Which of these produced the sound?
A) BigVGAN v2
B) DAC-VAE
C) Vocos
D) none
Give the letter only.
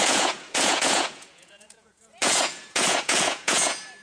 C